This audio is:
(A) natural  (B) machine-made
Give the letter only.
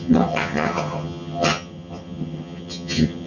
B